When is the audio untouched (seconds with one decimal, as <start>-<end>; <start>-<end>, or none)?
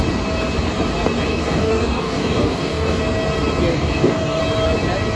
0.0-1.3; 3.0-3.7; 4.4-5.2